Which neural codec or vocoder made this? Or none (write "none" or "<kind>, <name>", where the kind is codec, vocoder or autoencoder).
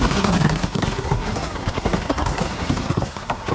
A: codec, SNAC